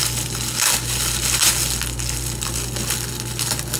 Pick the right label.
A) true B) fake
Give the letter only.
A